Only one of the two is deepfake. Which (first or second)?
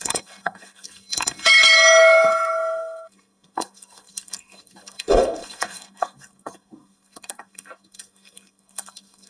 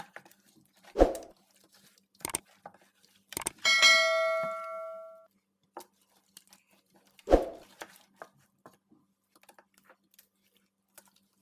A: first